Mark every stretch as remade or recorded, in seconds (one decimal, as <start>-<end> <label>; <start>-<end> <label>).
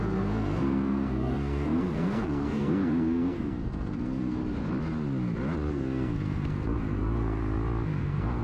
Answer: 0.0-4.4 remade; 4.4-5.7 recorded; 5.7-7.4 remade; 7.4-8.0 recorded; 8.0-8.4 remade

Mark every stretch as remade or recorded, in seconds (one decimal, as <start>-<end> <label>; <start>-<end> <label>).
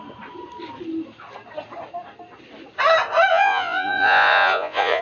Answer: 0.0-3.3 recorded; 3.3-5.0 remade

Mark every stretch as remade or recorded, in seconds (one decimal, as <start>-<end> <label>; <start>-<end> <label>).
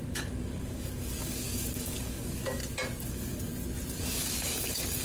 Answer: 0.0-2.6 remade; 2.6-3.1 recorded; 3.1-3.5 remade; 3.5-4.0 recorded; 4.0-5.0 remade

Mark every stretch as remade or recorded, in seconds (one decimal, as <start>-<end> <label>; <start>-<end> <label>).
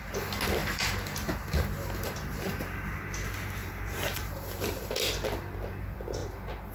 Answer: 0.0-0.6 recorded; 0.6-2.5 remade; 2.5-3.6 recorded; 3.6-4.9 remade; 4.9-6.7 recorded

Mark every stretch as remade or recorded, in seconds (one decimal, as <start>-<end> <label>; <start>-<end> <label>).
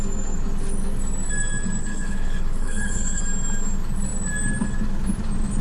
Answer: 0.0-1.8 recorded; 1.8-3.2 remade; 3.2-5.6 recorded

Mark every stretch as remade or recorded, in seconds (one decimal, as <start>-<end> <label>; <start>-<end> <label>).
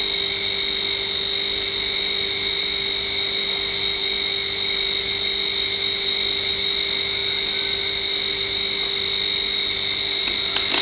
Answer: 0.0-10.8 recorded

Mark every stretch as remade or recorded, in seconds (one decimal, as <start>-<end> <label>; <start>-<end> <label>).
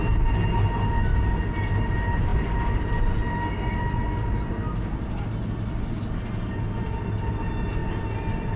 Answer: 0.0-8.6 recorded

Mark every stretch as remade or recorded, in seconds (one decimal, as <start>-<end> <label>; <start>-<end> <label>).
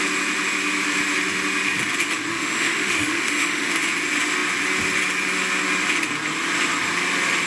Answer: 0.0-2.3 recorded; 2.3-3.7 remade; 3.7-7.5 recorded